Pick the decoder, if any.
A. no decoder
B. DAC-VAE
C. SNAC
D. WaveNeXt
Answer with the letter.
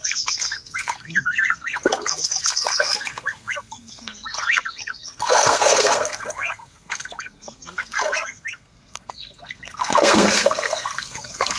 C